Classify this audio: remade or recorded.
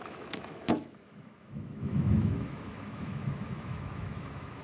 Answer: remade